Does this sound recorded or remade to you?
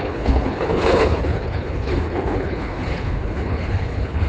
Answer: remade